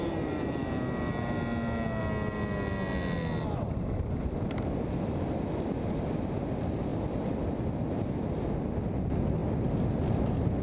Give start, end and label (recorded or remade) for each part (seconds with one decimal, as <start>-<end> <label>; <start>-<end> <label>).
0.0-10.6 recorded